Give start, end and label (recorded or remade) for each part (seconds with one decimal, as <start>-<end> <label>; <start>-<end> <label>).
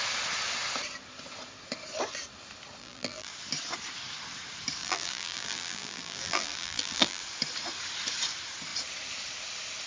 0.0-2.8 recorded; 2.8-3.3 remade; 3.3-4.8 recorded; 4.8-7.2 remade; 7.2-9.9 recorded